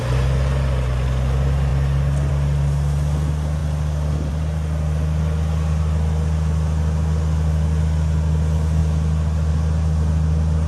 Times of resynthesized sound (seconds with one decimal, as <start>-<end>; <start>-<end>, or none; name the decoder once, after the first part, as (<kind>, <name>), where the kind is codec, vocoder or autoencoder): none